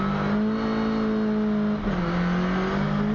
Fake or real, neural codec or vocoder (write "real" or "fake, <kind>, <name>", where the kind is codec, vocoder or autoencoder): real